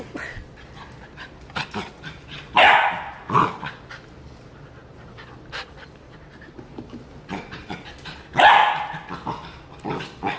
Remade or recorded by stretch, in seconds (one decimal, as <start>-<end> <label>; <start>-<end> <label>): 0.0-10.4 recorded